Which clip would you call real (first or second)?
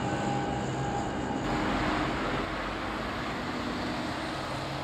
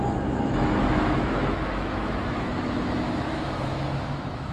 first